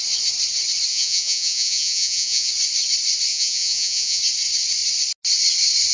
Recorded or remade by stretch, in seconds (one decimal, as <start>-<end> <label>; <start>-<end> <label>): 0.0-0.9 recorded; 0.9-2.5 remade; 2.5-3.3 recorded; 3.3-4.2 remade; 4.2-5.9 recorded